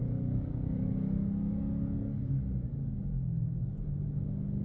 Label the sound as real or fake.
fake